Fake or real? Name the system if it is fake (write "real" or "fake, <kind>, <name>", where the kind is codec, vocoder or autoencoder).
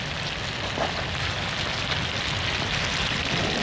real